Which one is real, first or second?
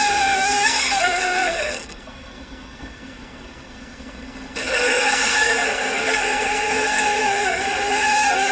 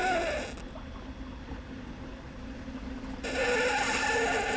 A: second